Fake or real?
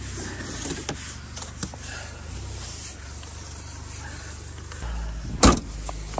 real